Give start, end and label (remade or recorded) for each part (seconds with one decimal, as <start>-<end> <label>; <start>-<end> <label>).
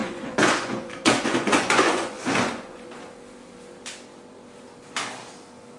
0.0-2.9 remade; 2.9-5.8 recorded